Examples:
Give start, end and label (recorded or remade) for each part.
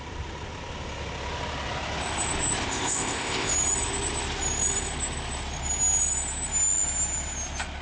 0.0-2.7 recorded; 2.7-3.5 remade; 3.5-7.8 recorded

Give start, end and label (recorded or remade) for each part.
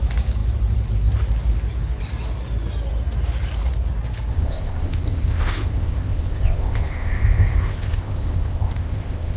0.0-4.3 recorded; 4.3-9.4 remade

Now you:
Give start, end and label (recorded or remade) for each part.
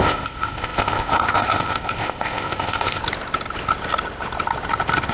0.0-3.0 remade; 3.0-5.1 recorded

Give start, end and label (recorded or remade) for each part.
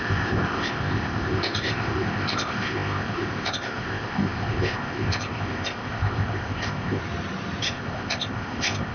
0.0-7.0 remade; 7.0-7.6 recorded; 7.6-8.9 remade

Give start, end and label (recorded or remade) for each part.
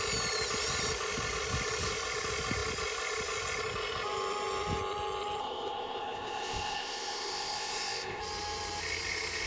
0.0-5.4 recorded; 5.4-8.2 remade; 8.2-9.5 recorded